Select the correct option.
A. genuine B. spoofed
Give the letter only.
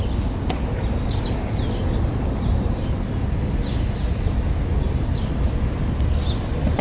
A